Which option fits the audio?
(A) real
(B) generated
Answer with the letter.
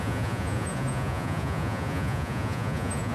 B